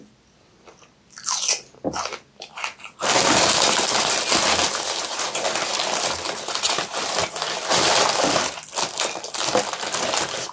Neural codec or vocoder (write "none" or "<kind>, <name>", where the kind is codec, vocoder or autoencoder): none